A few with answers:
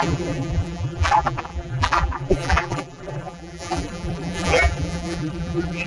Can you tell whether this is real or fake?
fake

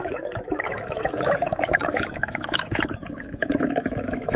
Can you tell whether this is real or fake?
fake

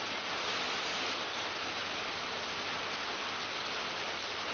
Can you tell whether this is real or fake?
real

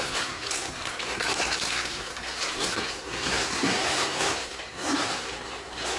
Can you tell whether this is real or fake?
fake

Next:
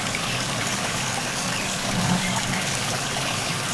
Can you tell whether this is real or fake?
fake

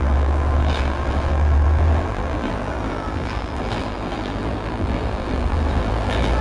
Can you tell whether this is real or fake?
fake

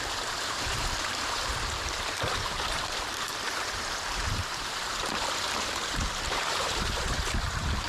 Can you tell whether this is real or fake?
fake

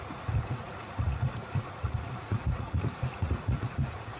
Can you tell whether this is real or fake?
fake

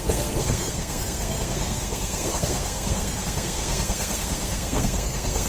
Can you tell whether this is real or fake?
fake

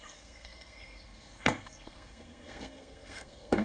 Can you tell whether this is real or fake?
fake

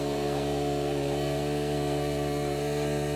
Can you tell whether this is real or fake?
fake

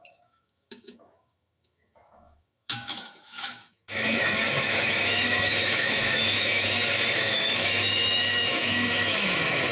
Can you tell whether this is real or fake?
fake